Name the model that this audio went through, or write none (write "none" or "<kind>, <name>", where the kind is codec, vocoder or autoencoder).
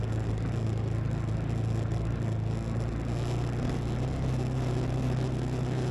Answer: none